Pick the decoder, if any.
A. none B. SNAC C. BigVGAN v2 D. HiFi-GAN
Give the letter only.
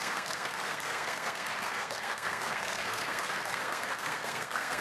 B